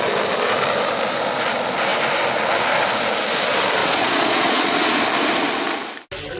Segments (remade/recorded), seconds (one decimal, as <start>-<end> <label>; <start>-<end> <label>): 0.0-3.8 recorded; 3.8-5.0 remade; 5.0-6.4 recorded